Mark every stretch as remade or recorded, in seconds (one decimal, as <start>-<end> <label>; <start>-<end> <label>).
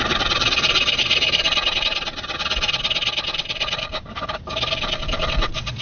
0.0-5.8 recorded